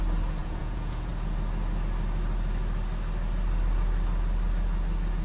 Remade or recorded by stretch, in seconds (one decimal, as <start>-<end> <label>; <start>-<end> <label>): 0.0-0.4 recorded; 0.4-1.1 remade; 1.1-5.2 recorded